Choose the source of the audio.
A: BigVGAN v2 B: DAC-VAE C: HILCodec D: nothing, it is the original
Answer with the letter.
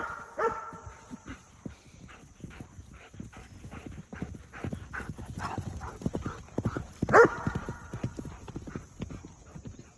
D